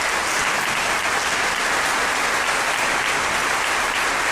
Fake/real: real